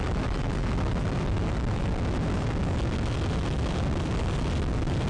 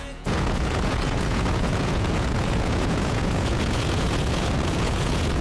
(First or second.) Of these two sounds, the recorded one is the first